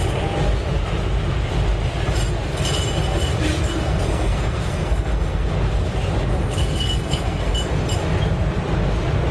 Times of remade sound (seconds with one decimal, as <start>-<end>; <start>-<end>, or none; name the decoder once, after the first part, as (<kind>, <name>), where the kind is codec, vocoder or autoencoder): 3.8-5.5 (codec, SNAC); 6.4-7.5